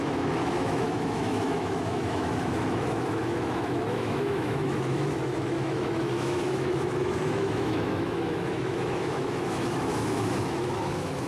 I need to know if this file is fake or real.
fake